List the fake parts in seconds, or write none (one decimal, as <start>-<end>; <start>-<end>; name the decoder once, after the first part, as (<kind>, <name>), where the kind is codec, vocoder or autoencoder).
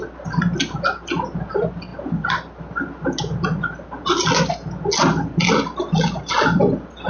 none